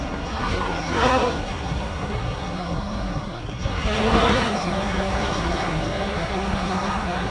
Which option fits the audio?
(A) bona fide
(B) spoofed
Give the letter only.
B